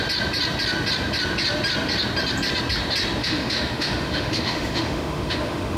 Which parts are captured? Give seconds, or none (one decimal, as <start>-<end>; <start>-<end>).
0.0-3.2